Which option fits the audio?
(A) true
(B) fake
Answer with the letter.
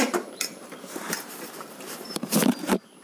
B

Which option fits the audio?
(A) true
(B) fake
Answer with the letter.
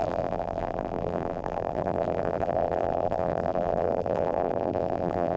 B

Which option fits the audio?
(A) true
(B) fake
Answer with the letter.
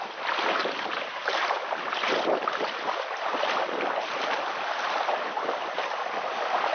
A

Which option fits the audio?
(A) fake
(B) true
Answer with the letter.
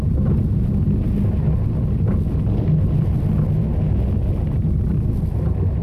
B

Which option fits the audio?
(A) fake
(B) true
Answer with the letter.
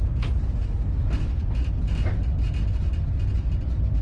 B